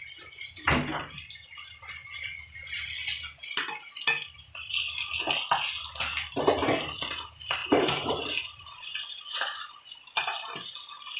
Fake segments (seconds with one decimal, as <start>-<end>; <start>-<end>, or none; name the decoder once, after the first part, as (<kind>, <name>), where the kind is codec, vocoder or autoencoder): 2.0-2.5 (vocoder, BigVGAN v2); 7.6-9.7